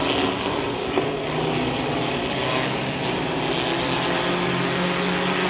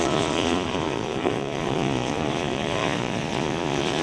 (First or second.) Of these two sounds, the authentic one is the first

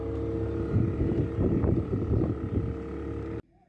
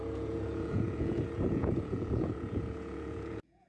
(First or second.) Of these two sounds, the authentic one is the first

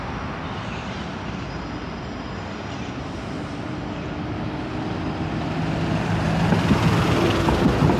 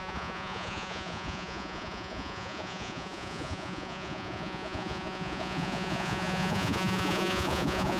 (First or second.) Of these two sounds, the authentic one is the first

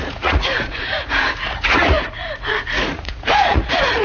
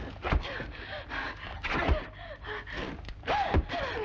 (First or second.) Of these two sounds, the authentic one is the second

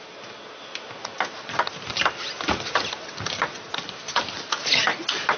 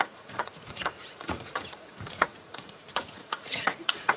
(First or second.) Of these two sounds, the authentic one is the first